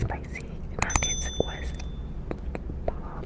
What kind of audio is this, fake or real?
real